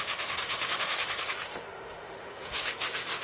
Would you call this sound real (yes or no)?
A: no